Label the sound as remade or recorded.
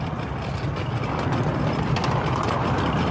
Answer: recorded